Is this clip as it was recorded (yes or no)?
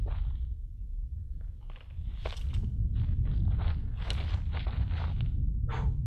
yes